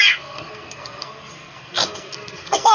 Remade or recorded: remade